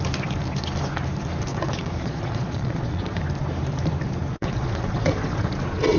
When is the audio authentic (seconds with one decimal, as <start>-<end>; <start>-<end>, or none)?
0.0-1.5; 3.2-4.3; 5.5-6.0